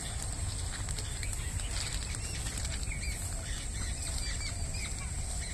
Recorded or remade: recorded